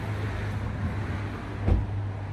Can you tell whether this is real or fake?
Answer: real